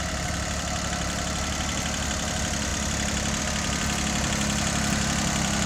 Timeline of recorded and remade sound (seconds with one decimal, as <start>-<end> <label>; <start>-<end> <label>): 0.0-5.7 recorded